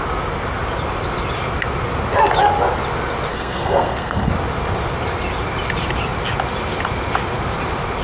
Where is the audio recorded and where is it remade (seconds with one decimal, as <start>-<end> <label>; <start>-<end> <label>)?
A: 0.0-3.3 recorded; 3.3-4.3 remade; 4.3-8.0 recorded